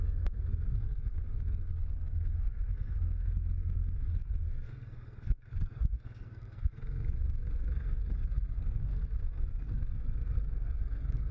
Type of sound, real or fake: fake